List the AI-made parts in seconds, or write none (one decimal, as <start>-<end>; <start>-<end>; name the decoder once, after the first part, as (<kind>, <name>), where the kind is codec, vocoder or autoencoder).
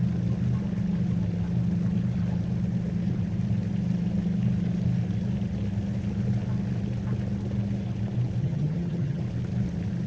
8.4-9.2 (vocoder, HiFi-GAN)